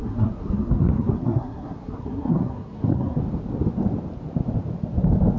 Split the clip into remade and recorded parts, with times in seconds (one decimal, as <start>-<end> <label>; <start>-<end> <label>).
0.0-3.2 remade; 3.2-5.4 recorded